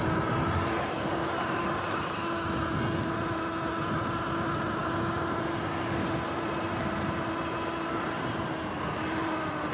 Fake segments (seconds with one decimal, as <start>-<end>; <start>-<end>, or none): none